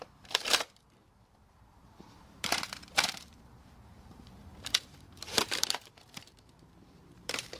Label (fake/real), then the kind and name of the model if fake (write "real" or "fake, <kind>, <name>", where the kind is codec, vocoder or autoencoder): fake, vocoder, BigVGAN v2